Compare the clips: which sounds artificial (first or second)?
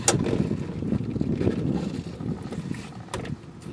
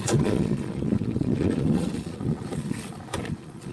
second